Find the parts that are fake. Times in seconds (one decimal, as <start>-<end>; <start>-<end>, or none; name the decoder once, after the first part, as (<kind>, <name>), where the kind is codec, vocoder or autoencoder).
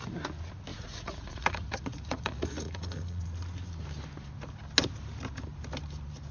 0.7-3.2 (vocoder, Vocos)